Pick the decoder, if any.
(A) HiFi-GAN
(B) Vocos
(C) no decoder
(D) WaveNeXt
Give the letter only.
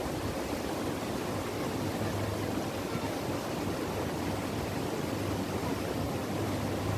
C